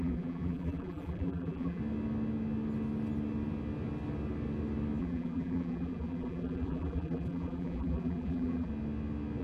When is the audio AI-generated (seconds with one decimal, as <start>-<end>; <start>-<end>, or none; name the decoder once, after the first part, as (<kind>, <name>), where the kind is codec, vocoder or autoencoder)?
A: 0.0-1.8 (vocoder, BigVGAN v2); 5.0-8.7